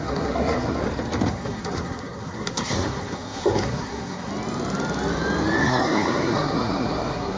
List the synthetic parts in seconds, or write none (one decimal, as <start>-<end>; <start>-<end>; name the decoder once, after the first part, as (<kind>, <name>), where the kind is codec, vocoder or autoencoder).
0.0-0.8 (codec, SNAC); 1.3-4.3; 5.6-7.4